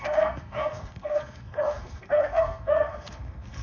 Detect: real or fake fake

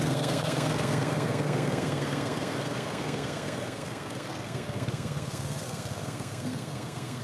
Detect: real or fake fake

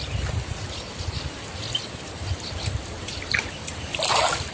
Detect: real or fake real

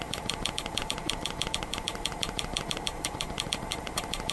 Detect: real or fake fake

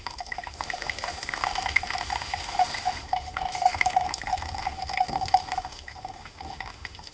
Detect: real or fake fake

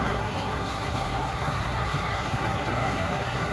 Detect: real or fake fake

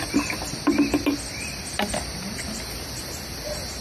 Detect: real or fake real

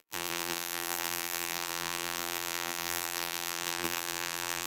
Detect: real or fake fake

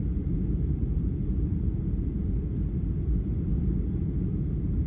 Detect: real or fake real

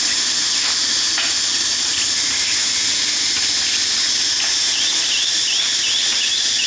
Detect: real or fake real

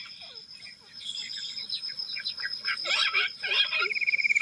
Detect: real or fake fake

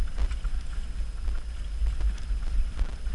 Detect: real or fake real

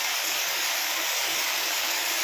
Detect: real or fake fake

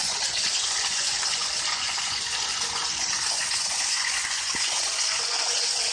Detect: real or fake fake